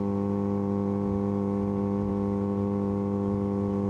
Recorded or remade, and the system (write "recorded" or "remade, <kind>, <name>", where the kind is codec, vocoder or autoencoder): remade, vocoder, Vocos